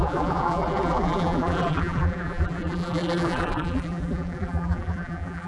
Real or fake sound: fake